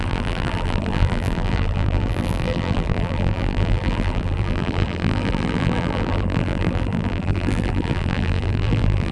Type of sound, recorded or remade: remade